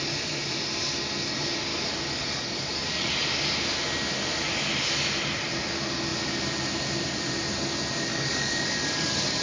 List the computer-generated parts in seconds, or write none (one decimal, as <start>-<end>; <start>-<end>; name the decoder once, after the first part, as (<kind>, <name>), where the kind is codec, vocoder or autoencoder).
1.7-3.1 (codec, DAC); 8.1-9.4